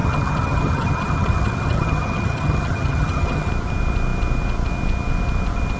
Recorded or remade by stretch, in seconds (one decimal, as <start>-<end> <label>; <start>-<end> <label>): 0.0-3.5 remade; 3.5-5.8 recorded